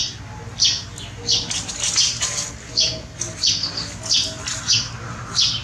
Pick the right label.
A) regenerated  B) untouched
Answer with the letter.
B